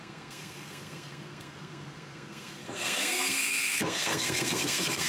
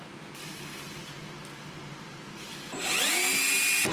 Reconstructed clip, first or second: first